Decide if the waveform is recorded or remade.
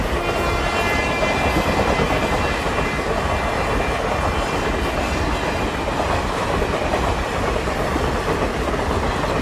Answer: recorded